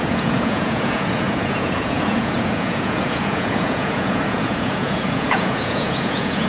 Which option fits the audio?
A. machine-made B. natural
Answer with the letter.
A